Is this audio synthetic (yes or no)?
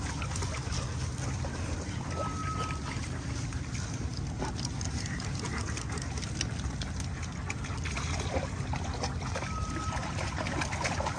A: no